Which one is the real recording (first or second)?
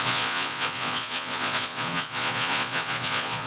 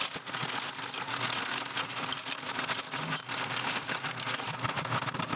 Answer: second